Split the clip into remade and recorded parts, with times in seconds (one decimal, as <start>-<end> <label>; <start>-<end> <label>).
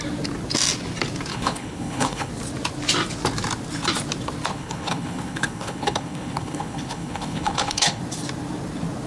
0.0-1.3 recorded; 1.3-2.3 remade; 2.3-4.5 recorded; 4.5-8.0 remade; 8.0-9.1 recorded